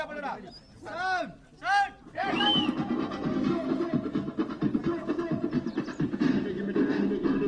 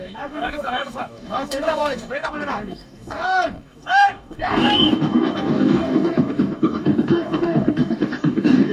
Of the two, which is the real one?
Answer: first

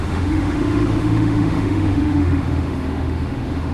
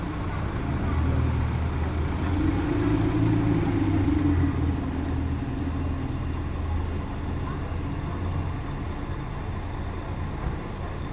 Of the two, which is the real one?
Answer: second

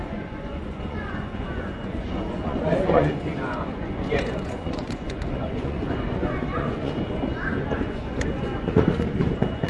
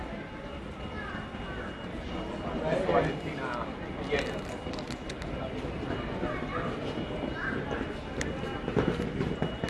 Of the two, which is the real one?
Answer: second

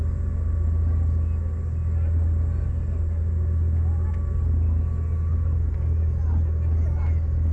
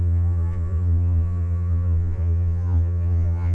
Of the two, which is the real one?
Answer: first